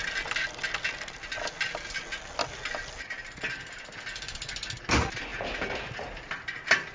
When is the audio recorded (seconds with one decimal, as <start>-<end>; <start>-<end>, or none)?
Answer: 0.0-6.9